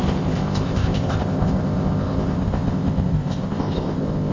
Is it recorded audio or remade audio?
remade